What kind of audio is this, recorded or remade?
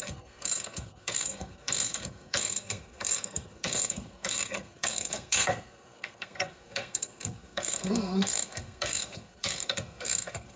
remade